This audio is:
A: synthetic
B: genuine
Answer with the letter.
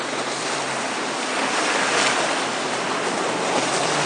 A